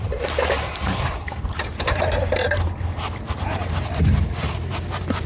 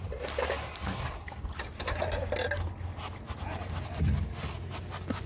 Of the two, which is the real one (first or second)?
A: second